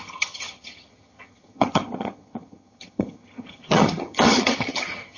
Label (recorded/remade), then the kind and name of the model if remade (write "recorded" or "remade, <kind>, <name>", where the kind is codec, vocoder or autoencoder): remade, vocoder, HiFi-GAN